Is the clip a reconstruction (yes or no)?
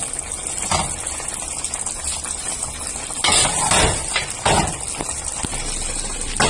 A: no